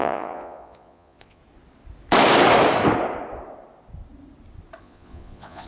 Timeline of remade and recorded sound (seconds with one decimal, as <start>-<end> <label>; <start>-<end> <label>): 0.0-1.4 remade; 1.4-4.8 recorded; 4.8-5.7 remade